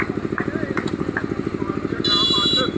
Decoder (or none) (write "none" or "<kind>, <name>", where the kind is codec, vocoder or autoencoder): none